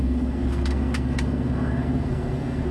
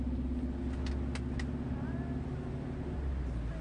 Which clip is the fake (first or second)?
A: first